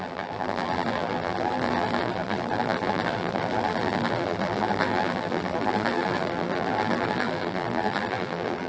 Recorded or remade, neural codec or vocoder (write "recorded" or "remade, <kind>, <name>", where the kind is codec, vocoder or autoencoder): remade, vocoder, BigVGAN v2